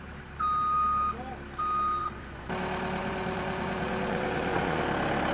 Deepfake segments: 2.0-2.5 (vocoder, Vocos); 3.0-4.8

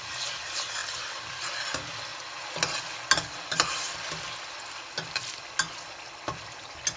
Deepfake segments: none

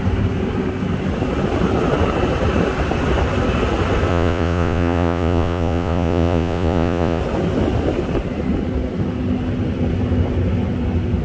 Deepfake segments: 4.1-7.2 (vocoder, Vocos)

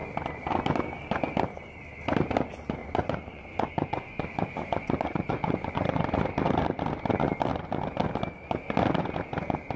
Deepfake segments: 2.8-6.1 (vocoder, Vocos)

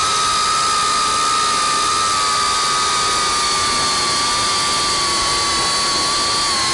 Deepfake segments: none

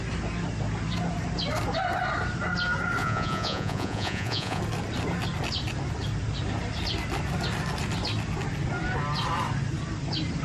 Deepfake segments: 3.0-4.6 (vocoder, Vocos)